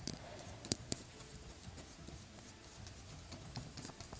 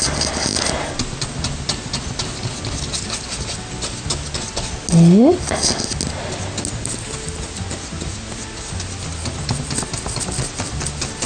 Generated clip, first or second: first